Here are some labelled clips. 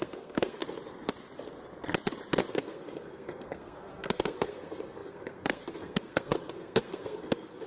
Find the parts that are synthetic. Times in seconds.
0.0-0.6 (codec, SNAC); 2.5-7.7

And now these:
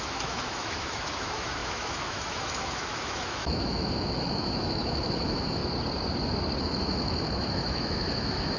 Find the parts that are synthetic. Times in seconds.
0.0-5.6 (autoencoder, DAC-VAE); 6.6-8.6

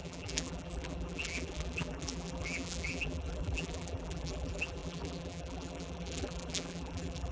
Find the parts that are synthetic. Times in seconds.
0.0-7.3 (vocoder, BigVGAN v2)

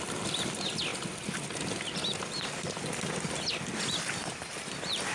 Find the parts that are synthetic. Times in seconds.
none

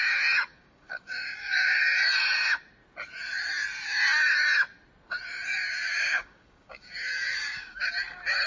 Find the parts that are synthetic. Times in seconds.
0.5-1.8 (codec, DAC); 5.5-7.9

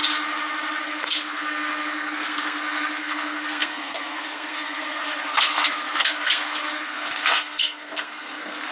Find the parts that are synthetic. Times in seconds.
0.8-8.7 (codec, SNAC)

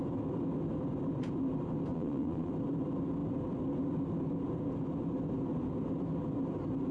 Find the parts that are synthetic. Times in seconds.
1.9-2.5 (vocoder, Vocos)